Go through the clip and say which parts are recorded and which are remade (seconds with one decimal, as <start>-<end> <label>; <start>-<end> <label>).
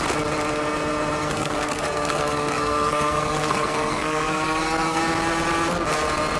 0.0-1.2 recorded; 1.2-5.0 remade; 5.0-6.4 recorded